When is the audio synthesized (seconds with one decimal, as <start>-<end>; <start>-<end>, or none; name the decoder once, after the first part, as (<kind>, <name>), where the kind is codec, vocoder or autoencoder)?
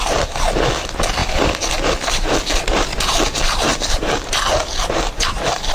3.7-5.2 (vocoder, BigVGAN v2)